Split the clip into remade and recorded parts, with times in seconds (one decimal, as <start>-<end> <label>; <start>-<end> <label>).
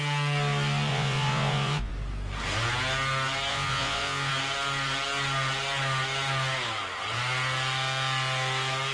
0.0-0.9 recorded; 0.9-1.9 remade; 1.9-3.5 recorded; 3.5-4.3 remade; 4.3-8.9 recorded